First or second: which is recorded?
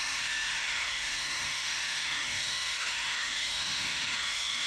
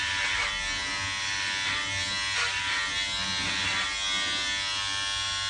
second